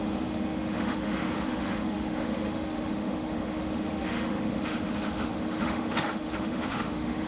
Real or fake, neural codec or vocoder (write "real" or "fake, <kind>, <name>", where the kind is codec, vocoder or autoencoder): fake, autoencoder, DAC-VAE